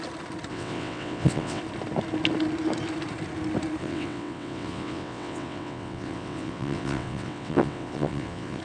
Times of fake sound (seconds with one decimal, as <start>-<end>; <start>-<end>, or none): 0.5-1.6; 3.8-8.6